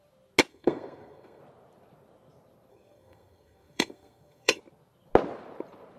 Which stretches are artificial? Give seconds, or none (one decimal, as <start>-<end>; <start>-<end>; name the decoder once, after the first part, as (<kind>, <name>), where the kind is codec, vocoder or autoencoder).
0.5-1.4 (codec, SNAC); 2.7-4.6